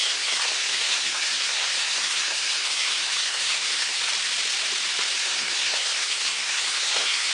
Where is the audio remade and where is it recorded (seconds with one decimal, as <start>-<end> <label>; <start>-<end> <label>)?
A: 0.0-4.0 remade; 4.0-5.2 recorded; 5.2-7.3 remade